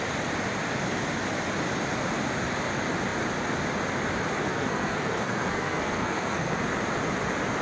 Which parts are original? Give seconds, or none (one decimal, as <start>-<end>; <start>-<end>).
0.0-4.4; 6.6-7.6